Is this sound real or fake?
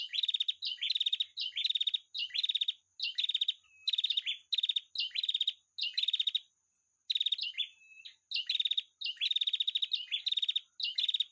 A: real